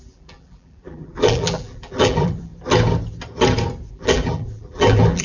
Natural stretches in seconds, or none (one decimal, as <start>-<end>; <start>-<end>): 2.5-3.9